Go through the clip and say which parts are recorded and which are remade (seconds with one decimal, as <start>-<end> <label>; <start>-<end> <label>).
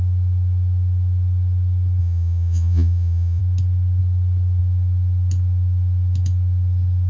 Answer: 0.0-2.0 recorded; 2.0-3.4 remade; 3.4-7.1 recorded